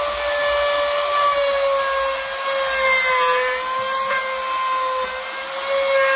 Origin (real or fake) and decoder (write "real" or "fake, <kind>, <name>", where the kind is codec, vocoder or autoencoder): real